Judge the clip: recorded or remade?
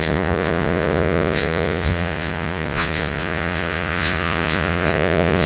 remade